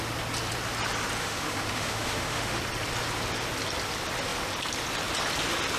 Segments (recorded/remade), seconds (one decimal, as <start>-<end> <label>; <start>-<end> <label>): 0.0-1.2 recorded; 1.2-2.6 remade; 2.6-5.8 recorded